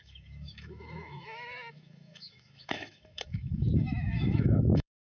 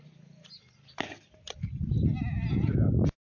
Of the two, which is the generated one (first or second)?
first